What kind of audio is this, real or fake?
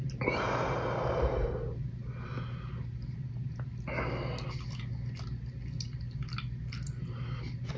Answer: real